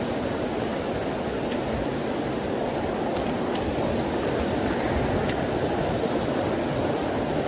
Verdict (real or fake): real